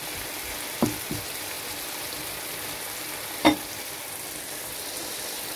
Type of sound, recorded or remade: remade